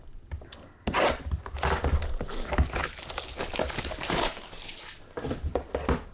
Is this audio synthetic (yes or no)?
no